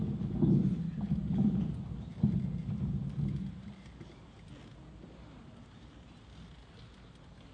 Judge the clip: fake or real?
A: real